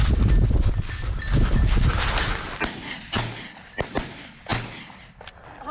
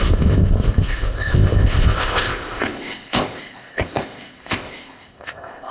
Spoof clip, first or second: second